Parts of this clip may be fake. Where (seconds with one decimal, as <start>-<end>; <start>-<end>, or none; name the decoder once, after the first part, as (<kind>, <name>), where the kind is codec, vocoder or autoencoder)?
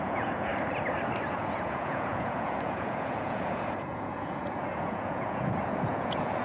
0.0-0.5 (vocoder, Vocos); 1.3-6.4